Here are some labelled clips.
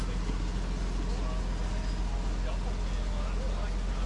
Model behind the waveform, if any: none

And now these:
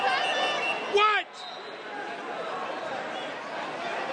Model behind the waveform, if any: none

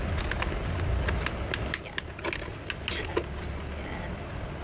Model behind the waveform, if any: none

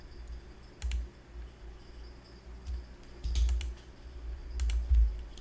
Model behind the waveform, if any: none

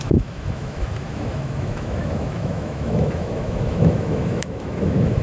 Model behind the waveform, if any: autoencoder, DAC-VAE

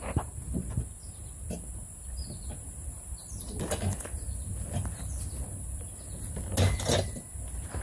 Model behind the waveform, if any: none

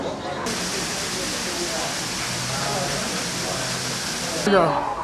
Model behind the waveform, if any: none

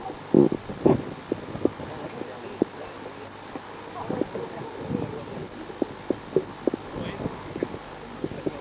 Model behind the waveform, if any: none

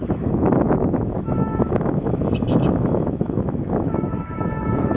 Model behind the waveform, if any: autoencoder, DAC-VAE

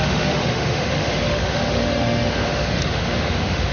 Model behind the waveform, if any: autoencoder, DAC-VAE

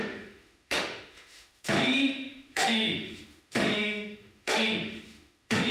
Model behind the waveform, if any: autoencoder, DAC-VAE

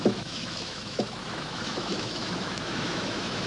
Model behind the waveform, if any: autoencoder, DAC-VAE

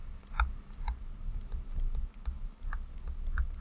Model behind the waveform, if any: none